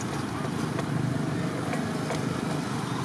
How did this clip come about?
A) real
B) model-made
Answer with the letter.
A